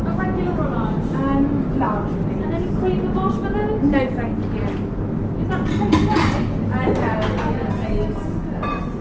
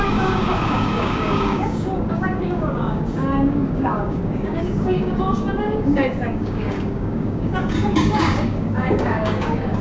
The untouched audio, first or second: first